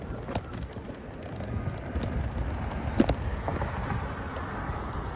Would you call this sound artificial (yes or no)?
no